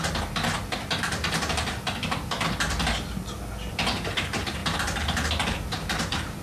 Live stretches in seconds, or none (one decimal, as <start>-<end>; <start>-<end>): 0.0-3.7; 4.6-5.3